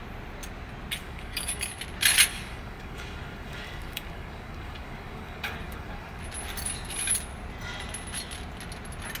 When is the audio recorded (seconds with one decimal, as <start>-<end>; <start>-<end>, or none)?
0.0-1.0; 1.8-2.3; 6.2-9.2

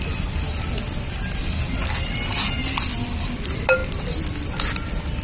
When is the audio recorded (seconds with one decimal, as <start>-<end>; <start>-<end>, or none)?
0.0-5.2

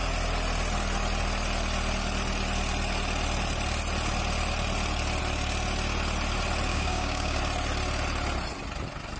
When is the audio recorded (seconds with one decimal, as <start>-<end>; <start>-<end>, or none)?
0.0-6.7; 7.4-9.2

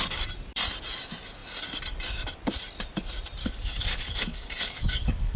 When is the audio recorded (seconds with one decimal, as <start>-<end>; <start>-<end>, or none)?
0.0-3.4

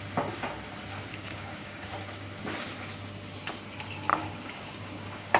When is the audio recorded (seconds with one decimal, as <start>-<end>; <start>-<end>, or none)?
0.0-1.1; 1.9-4.1

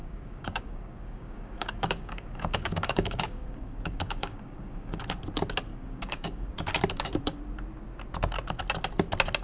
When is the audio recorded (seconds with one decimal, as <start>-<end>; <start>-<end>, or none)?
5.0-5.7; 6.5-9.4